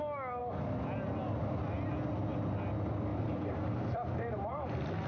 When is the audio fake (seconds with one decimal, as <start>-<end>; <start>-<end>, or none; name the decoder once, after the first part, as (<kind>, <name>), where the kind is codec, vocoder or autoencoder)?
3.1-5.1 (vocoder, BigVGAN v2)